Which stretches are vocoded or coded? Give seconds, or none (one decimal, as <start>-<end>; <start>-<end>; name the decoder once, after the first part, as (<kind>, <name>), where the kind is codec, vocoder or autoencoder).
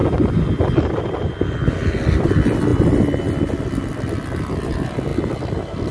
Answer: none